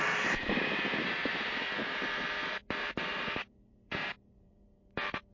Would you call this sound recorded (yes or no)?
no